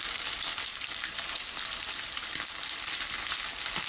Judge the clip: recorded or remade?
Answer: recorded